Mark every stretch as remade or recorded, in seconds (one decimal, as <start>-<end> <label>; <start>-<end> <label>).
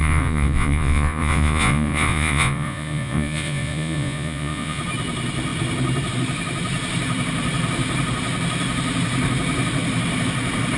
0.0-4.8 remade; 4.8-10.8 recorded